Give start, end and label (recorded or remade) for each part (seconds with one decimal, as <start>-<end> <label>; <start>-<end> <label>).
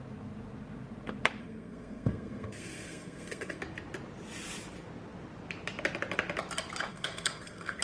0.0-1.4 recorded; 1.4-3.6 remade; 3.6-6.9 recorded; 6.9-7.8 remade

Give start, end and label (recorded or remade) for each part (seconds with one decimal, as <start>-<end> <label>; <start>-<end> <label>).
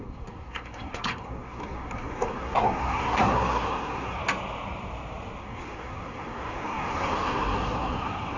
0.0-4.2 remade; 4.2-5.4 recorded; 5.4-8.4 remade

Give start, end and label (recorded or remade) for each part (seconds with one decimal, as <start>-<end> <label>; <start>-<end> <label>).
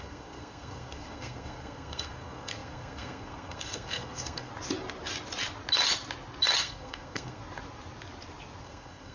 0.0-4.5 remade; 4.5-6.6 recorded; 6.6-7.4 remade; 7.4-8.6 recorded; 8.6-9.1 remade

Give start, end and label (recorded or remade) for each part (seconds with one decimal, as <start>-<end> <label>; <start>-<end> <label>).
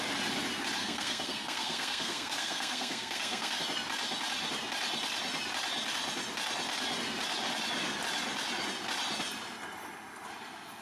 0.0-0.8 recorded; 0.8-3.6 remade; 3.6-10.8 recorded